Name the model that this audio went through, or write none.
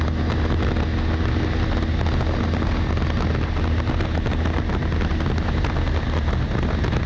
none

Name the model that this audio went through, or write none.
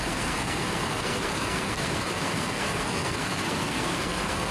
codec, SNAC